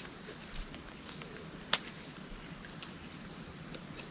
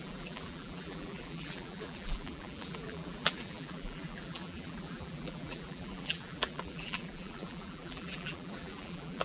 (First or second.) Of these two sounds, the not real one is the second